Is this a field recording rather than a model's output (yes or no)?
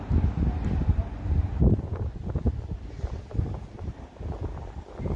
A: yes